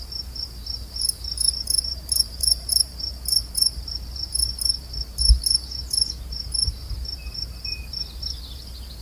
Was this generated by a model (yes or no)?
yes